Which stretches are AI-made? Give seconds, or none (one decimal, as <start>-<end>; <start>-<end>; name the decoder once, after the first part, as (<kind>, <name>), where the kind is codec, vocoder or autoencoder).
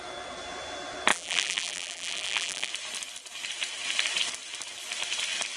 1.1-2.7 (vocoder, BigVGAN v2)